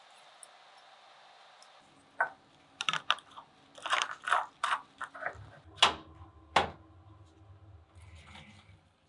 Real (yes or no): yes